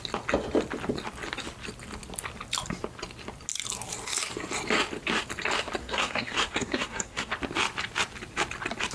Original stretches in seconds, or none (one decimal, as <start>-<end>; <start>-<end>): 0.0-5.8; 7.3-8.9